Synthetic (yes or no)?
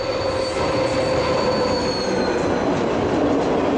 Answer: no